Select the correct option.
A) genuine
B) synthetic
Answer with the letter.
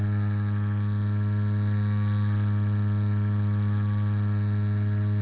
A